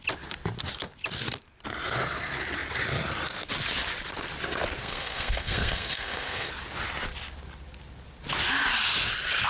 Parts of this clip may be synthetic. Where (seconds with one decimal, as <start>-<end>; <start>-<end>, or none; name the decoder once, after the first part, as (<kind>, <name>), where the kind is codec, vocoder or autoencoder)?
4.8-6.5 (codec, SNAC)